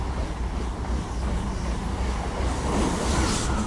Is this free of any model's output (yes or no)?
yes